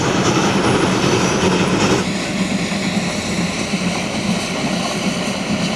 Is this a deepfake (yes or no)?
no